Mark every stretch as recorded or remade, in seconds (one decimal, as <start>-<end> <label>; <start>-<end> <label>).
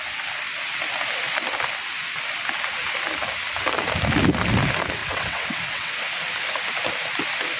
0.0-5.0 recorded; 5.0-5.9 remade; 5.9-7.6 recorded